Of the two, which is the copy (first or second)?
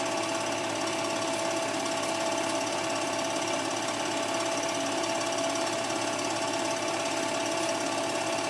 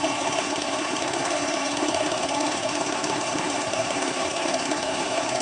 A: second